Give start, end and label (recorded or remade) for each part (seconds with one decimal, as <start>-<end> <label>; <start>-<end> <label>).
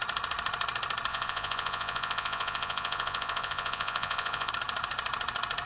0.0-1.1 recorded; 1.1-4.5 remade; 4.5-5.7 recorded